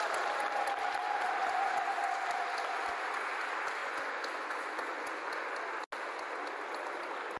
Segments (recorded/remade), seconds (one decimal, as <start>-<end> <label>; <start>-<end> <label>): 0.0-1.4 recorded; 1.4-2.0 remade; 2.0-3.8 recorded; 3.8-5.5 remade; 5.5-7.4 recorded